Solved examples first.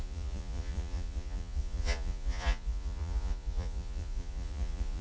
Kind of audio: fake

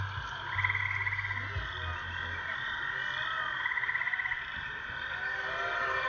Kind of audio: real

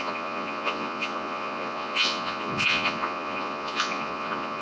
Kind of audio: fake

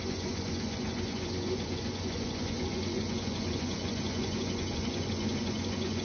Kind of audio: fake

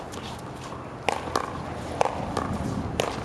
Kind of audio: real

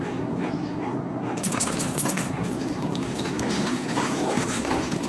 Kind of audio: fake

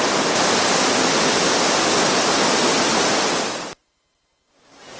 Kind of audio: real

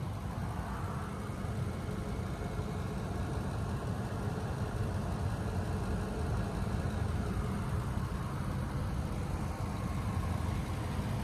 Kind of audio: real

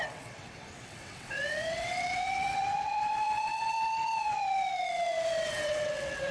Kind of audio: fake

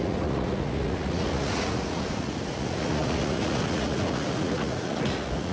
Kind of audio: fake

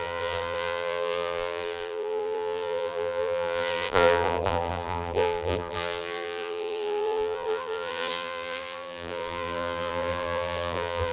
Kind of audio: fake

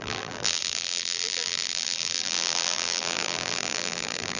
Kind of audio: fake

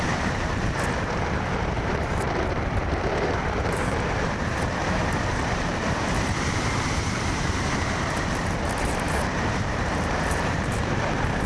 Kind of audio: fake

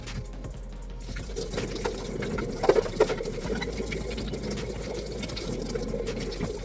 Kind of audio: real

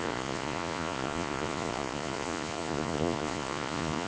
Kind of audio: fake